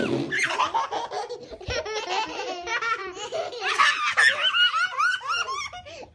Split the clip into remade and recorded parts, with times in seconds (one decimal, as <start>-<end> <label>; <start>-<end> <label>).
0.0-3.0 recorded; 3.0-4.0 remade; 4.0-6.1 recorded